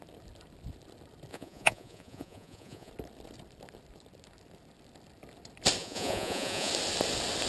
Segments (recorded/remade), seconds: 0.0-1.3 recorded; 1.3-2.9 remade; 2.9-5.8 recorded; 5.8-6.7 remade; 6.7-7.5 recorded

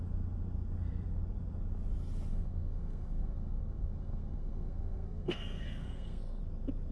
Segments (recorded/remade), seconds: 0.0-2.3 recorded; 2.3-6.4 remade; 6.4-6.9 recorded

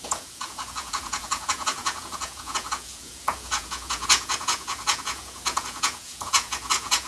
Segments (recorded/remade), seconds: 0.0-7.1 remade

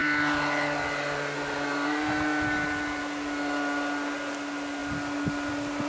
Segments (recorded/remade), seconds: 0.0-3.0 remade; 3.0-5.9 recorded